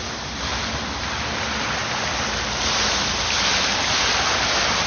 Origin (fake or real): real